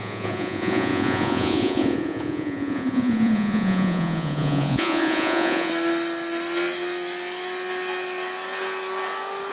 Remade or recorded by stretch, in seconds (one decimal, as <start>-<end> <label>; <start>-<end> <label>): 0.0-5.7 remade; 5.7-9.5 recorded